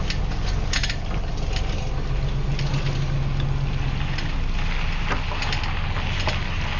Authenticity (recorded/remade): recorded